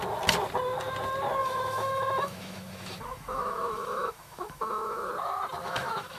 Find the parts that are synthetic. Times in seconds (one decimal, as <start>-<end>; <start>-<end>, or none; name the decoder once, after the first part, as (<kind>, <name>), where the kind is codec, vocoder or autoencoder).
1.4-5.1 (autoencoder, DAC-VAE); 5.6-6.2